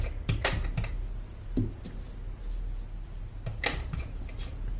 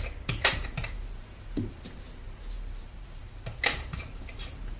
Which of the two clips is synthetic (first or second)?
second